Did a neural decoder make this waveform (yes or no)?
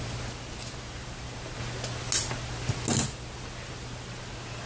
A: no